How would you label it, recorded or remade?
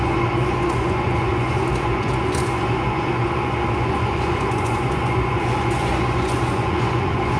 remade